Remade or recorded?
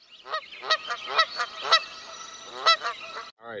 recorded